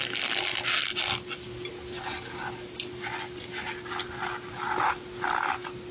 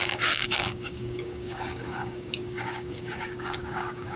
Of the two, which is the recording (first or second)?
first